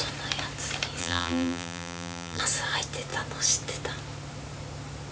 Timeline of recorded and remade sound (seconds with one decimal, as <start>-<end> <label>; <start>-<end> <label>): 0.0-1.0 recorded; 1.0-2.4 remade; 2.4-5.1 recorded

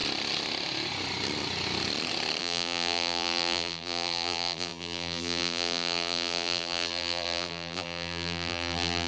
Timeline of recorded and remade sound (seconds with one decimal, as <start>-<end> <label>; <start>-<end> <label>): 0.0-2.4 recorded; 2.4-9.1 remade

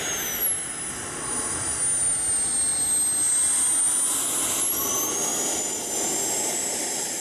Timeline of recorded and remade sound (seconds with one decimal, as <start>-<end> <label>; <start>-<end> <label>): 0.0-7.2 recorded

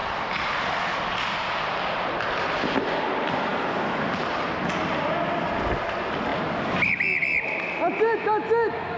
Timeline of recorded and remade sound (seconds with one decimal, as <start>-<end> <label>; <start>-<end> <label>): 0.0-9.0 recorded